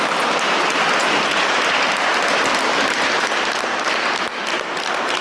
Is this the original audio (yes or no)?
yes